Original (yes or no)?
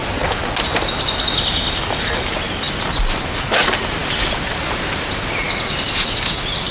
yes